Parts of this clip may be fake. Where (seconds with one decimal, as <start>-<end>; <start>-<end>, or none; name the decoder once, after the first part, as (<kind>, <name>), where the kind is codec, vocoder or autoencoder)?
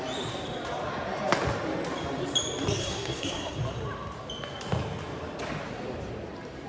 2.8-3.6 (codec, SNAC)